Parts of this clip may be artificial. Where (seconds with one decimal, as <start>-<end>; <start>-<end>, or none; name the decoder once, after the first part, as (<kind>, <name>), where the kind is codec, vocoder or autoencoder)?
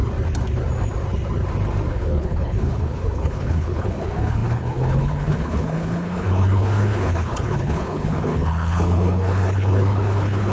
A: 1.9-10.5 (codec, HILCodec)